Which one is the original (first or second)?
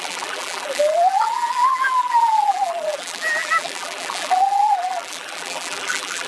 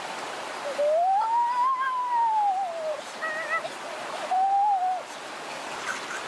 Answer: second